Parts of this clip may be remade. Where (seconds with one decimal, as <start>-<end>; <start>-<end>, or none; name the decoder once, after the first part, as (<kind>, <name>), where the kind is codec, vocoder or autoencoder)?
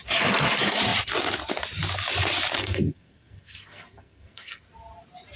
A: 2.6-4.6 (codec, SNAC)